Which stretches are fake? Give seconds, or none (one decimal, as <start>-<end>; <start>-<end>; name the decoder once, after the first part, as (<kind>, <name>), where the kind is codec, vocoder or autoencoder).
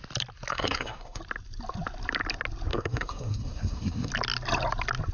0.5-1.2 (codec, SNAC); 2.7-4.1